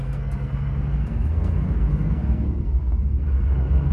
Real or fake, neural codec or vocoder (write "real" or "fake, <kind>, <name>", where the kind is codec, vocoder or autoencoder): fake, codec, SNAC